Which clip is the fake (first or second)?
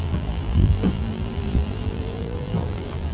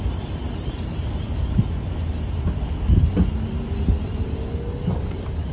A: first